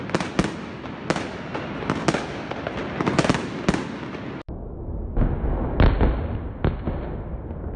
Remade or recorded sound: recorded